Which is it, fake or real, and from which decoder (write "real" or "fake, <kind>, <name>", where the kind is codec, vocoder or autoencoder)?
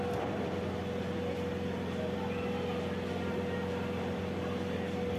real